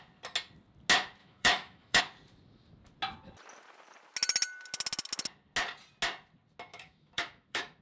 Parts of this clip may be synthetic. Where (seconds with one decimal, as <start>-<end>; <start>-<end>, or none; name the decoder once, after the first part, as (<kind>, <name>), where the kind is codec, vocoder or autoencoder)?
1.2-2.0 (autoencoder, DAC-VAE); 6.7-7.8